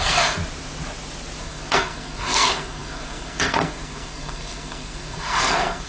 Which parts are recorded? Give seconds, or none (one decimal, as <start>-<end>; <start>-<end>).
0.4-1.4